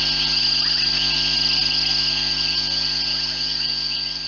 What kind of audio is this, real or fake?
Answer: real